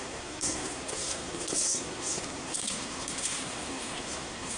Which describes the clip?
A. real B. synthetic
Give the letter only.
B